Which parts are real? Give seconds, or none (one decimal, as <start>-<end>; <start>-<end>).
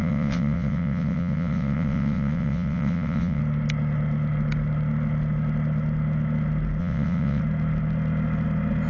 3.4-6.8; 7.4-8.9